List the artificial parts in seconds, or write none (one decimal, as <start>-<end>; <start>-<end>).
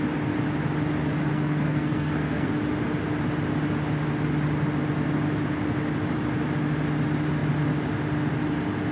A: 1.3-2.6